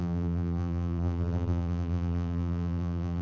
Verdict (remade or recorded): remade